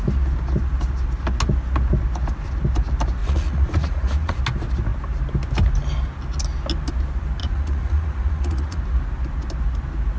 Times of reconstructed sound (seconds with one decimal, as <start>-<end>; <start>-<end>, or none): 3.2-4.4; 7.4-8.8